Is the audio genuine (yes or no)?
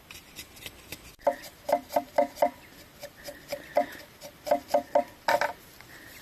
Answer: yes